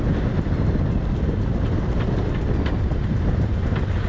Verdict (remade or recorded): recorded